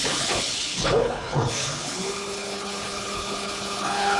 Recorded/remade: remade